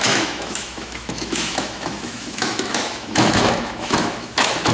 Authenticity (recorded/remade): remade